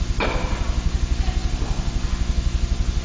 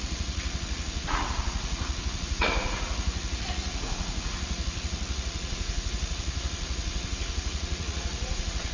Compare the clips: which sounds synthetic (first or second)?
second